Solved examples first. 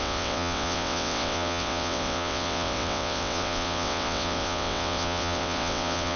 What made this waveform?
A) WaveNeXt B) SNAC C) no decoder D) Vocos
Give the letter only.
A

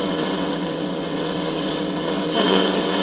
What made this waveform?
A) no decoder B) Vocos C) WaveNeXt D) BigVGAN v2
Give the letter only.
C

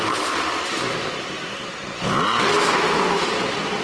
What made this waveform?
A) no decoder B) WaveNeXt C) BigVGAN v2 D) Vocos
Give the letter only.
A